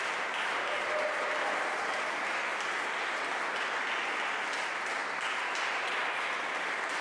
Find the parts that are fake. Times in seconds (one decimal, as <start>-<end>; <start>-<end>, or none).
none